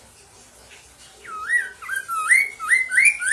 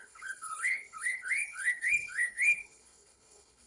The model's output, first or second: second